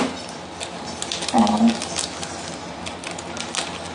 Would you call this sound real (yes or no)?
yes